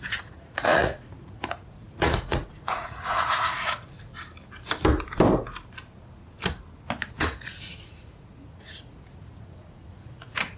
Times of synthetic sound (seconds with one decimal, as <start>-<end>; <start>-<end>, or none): 0.0-4.1; 7.1-10.6